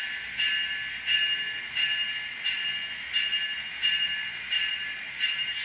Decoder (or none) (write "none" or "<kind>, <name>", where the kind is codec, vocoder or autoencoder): none